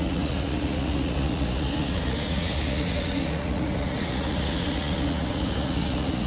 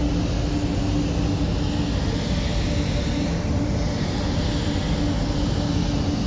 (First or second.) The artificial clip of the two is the first